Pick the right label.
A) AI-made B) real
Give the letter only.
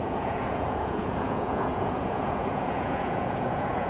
A